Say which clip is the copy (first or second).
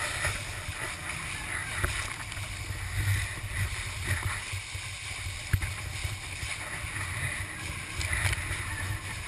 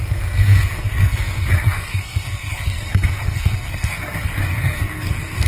second